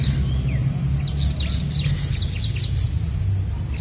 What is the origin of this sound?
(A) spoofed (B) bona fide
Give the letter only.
B